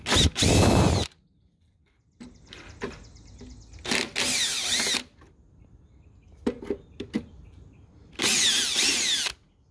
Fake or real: real